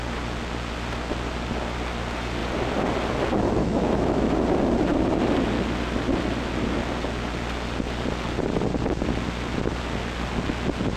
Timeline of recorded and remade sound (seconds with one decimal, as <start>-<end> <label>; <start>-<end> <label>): 0.0-3.6 recorded; 3.6-4.3 remade; 4.3-11.0 recorded